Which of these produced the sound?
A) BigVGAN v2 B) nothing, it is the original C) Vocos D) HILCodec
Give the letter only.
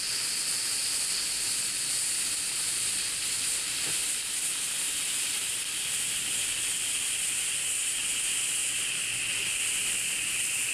B